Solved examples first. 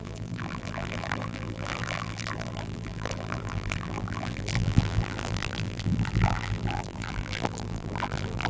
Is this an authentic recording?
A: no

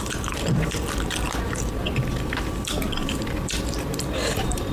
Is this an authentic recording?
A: no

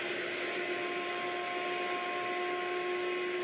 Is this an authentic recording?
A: yes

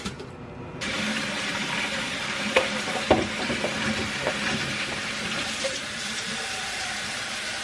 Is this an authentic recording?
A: no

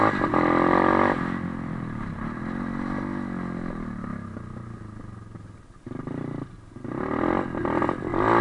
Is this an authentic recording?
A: yes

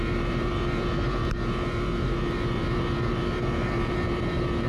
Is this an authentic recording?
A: no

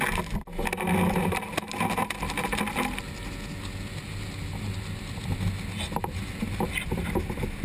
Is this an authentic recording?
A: yes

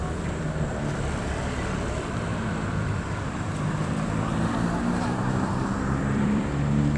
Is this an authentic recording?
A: no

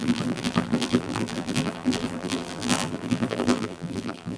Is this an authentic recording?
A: no